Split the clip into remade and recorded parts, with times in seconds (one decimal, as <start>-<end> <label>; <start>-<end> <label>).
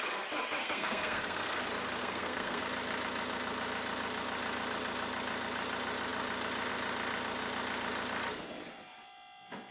0.0-0.6 recorded; 0.6-1.6 remade; 1.6-2.0 recorded; 2.0-2.6 remade; 2.6-9.7 recorded